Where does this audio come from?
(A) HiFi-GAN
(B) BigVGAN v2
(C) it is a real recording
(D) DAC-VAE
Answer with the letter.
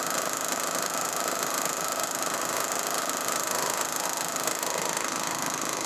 D